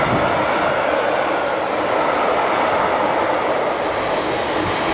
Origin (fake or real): real